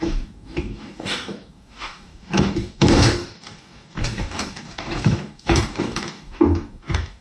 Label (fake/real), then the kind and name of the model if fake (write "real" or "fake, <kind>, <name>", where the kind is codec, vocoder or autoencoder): fake, codec, DAC